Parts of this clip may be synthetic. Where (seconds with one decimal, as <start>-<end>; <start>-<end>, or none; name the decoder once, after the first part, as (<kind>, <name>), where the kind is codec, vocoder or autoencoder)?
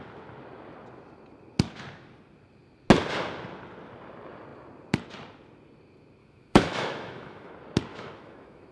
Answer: 6.2-7.5 (autoencoder, DAC-VAE); 7.9-8.7